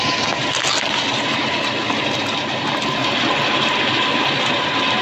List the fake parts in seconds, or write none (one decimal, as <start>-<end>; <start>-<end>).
none